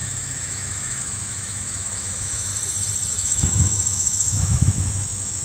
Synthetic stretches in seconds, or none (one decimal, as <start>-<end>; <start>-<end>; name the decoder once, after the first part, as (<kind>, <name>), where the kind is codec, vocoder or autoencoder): 0.0-2.5 (autoencoder, DAC-VAE); 3.1-5.4